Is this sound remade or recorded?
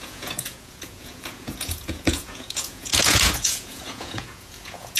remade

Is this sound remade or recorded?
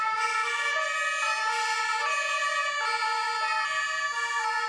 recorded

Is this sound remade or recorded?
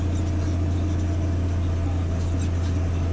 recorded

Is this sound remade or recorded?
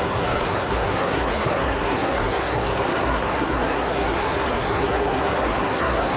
remade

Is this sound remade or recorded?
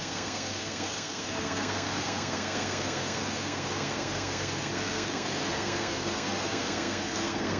remade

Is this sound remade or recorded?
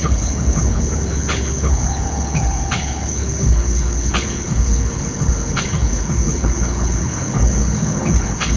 remade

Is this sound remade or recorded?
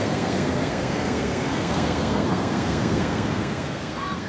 remade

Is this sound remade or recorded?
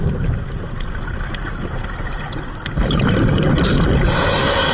recorded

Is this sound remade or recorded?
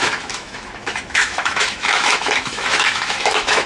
remade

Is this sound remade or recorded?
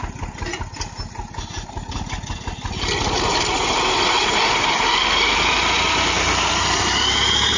recorded